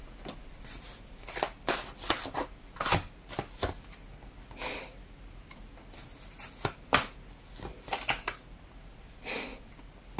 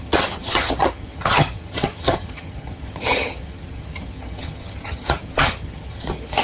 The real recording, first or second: first